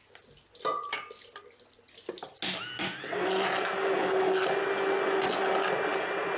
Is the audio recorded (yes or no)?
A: yes